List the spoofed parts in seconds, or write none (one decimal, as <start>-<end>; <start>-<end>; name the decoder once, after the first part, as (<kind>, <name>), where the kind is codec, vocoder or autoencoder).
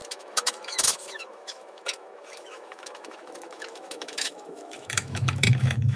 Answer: 0.0-6.0 (autoencoder, DAC-VAE)